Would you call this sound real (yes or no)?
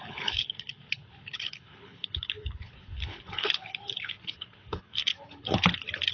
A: no